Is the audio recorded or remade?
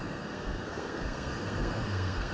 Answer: remade